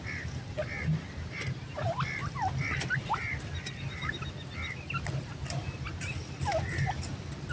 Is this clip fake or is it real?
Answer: real